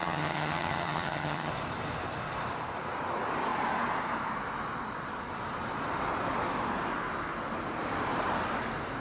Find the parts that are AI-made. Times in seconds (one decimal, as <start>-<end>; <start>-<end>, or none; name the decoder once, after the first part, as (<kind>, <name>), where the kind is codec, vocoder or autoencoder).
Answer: 0.0-1.5 (vocoder, HiFi-GAN)